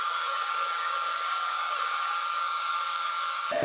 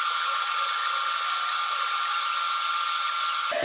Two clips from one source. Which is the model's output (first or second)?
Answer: first